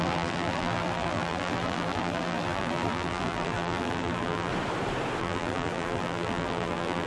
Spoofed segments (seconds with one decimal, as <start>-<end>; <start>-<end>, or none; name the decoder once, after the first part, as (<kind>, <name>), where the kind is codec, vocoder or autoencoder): 0.0-4.5 (vocoder, BigVGAN v2); 5.2-7.1